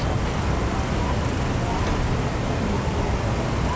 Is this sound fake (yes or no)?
no